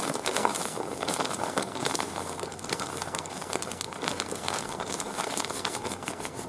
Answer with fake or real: fake